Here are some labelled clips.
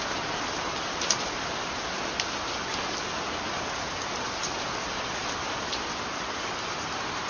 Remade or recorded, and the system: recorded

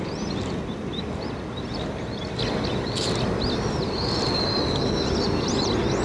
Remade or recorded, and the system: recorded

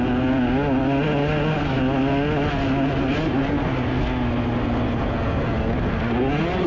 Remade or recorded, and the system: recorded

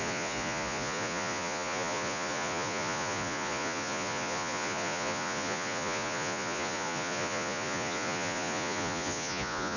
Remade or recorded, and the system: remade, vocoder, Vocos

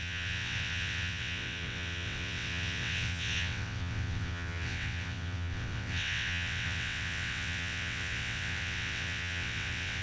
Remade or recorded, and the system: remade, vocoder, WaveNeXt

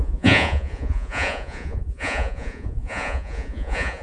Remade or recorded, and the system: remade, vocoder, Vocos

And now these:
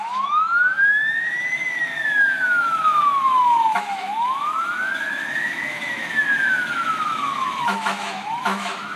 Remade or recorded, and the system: remade, autoencoder, DAC-VAE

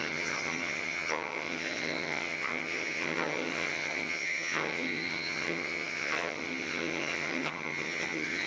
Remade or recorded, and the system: remade, vocoder, HiFi-GAN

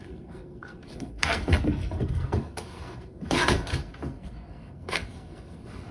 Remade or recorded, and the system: remade, codec, SNAC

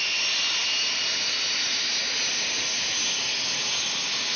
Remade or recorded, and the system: recorded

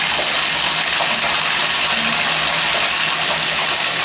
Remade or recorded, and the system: recorded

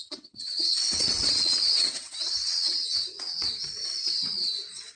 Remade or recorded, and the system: remade, vocoder, WaveNeXt